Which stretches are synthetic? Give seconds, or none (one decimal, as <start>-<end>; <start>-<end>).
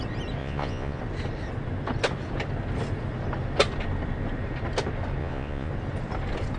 0.4-1.0; 5.2-5.7